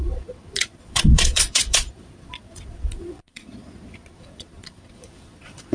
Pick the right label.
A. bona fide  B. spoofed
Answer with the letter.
B